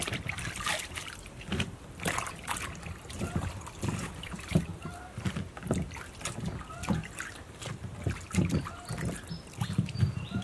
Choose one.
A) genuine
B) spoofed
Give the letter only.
B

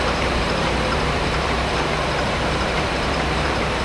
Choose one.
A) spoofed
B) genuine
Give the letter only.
A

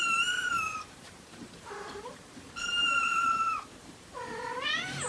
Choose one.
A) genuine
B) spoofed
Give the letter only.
B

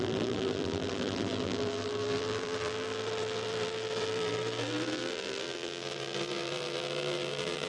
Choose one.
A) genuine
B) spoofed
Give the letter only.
B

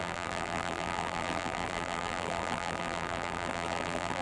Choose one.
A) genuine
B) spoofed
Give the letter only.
B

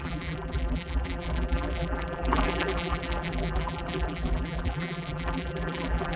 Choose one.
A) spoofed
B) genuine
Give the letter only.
A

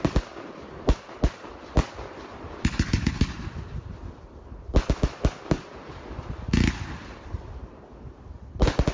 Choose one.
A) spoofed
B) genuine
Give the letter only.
B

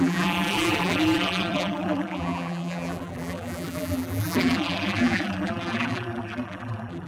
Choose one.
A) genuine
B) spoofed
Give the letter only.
B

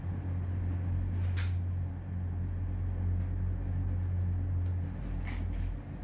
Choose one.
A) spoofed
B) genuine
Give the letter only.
B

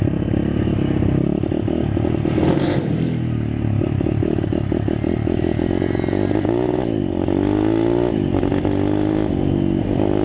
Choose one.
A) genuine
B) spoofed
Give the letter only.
A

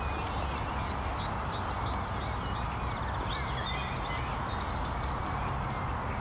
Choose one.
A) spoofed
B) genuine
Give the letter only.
B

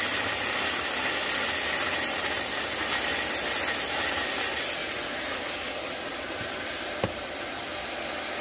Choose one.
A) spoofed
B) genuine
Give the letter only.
B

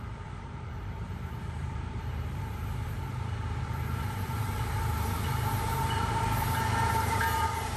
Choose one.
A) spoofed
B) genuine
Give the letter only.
A